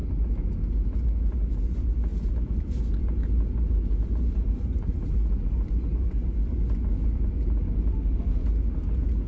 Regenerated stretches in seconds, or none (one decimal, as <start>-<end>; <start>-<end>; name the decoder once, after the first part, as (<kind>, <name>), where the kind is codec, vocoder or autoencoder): none